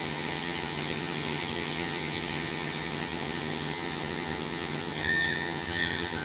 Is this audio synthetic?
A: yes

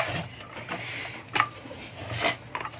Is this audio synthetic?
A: no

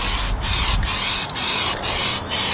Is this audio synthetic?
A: no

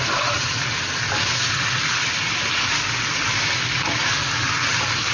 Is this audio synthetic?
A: no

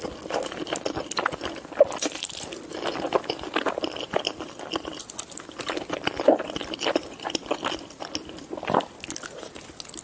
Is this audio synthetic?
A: no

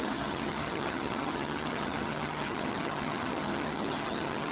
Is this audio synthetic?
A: yes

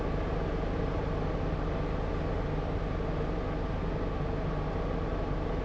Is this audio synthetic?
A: no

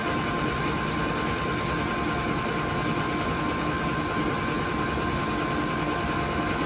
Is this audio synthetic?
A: no